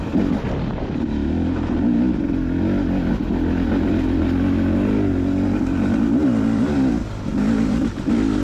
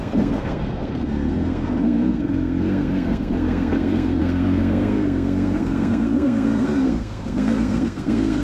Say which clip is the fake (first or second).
second